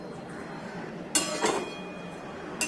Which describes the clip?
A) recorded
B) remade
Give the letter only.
A